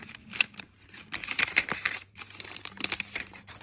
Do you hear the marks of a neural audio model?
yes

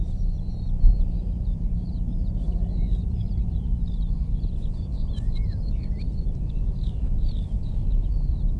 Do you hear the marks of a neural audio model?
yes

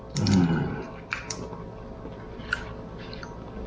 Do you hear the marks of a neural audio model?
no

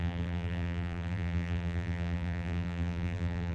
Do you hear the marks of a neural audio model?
yes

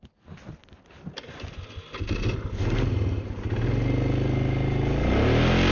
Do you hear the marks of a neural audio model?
no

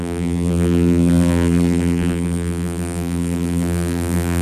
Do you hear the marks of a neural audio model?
yes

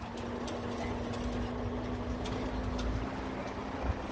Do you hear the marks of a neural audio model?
no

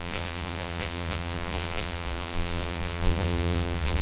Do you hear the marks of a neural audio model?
yes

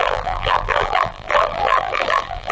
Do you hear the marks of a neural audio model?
yes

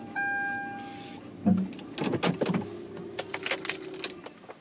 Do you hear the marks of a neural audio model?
no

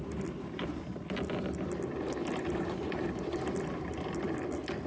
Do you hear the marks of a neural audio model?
no